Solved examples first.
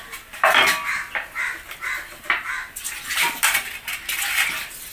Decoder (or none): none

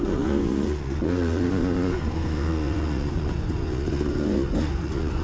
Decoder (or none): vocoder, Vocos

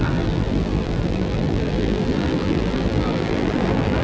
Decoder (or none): vocoder, BigVGAN v2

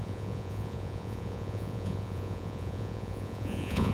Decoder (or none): vocoder, Vocos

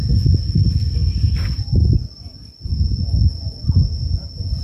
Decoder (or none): none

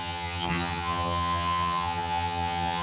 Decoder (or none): vocoder, HiFi-GAN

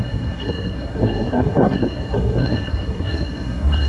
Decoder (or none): codec, SNAC